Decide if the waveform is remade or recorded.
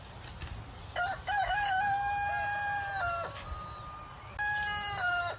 recorded